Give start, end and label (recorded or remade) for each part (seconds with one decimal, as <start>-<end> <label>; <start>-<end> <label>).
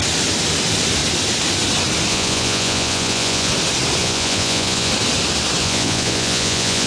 0.0-2.1 recorded; 2.1-3.5 remade; 3.5-4.0 recorded; 4.0-4.9 remade; 4.9-5.6 recorded; 5.6-6.9 remade